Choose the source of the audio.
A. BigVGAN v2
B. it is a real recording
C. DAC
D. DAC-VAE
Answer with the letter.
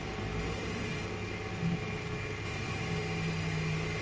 B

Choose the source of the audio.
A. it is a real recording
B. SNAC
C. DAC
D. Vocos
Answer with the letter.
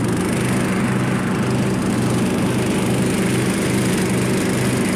A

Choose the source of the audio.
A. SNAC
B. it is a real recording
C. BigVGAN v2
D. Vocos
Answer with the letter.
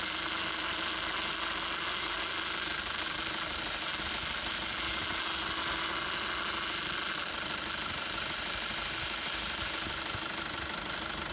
B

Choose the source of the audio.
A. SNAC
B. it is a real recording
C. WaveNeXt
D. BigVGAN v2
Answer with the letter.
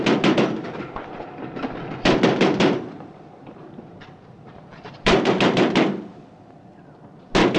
B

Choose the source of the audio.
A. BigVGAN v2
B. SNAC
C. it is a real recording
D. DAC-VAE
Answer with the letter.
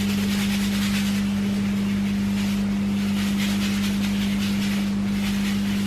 C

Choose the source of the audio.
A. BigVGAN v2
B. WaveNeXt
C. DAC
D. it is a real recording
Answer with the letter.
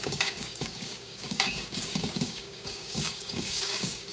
C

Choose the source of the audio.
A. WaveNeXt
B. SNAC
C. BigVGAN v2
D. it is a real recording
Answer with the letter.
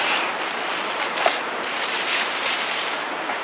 C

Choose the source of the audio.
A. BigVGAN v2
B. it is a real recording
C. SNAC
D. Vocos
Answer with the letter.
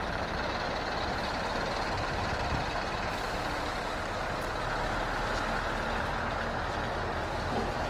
B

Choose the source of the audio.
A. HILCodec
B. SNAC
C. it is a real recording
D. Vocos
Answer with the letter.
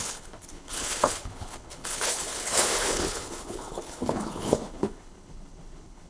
A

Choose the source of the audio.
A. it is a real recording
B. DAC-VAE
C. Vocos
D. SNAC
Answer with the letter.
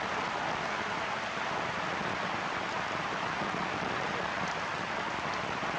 A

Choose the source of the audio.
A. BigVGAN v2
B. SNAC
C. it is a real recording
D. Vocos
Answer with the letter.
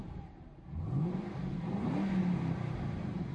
A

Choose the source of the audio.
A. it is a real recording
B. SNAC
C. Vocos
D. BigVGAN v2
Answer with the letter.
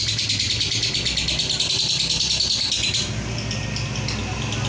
A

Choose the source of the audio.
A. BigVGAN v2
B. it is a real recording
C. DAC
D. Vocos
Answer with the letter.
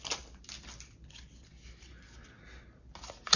B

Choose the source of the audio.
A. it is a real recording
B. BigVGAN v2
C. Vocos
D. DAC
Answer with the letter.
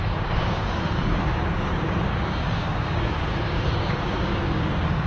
D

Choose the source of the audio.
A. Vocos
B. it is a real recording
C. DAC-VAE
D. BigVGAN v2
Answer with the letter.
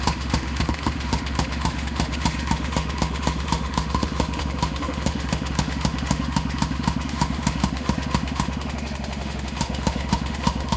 C